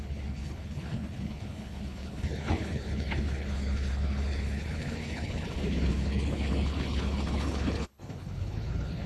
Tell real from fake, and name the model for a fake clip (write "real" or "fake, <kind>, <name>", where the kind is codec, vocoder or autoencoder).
fake, codec, HILCodec